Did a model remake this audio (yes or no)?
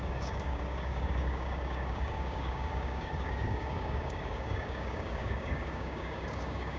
yes